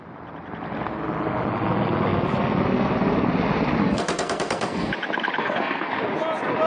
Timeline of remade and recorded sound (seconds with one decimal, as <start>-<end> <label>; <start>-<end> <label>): 0.0-3.8 recorded; 3.8-4.9 remade; 4.9-5.4 recorded; 5.4-5.9 remade; 5.9-6.7 recorded